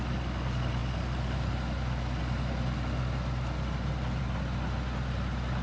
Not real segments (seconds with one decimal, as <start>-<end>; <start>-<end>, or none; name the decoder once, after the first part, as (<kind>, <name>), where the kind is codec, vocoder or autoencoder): none